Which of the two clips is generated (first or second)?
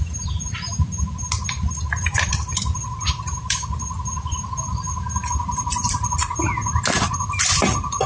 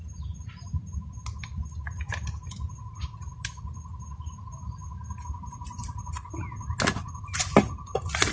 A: first